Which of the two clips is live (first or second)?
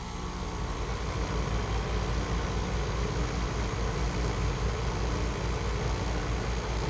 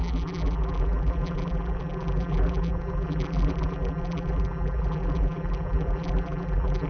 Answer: first